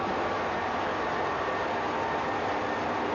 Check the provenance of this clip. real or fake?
real